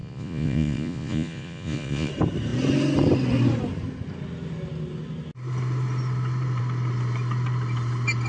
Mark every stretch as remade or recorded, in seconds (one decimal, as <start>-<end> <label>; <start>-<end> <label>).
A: 0.0-2.1 remade; 2.1-8.3 recorded